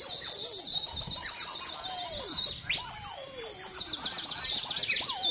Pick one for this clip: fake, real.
real